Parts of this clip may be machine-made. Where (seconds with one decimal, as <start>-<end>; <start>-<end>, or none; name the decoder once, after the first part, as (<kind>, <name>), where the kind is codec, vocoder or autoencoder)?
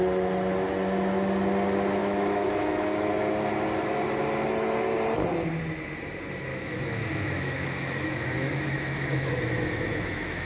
2.0-3.1 (autoencoder, DAC-VAE); 6.5-10.5